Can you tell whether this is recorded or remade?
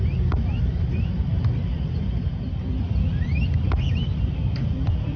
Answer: remade